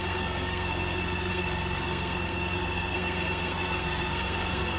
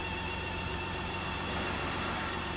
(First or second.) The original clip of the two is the second